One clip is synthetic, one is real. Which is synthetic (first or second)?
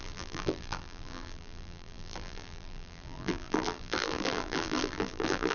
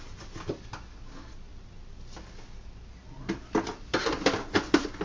first